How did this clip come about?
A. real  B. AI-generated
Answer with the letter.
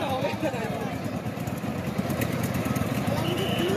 B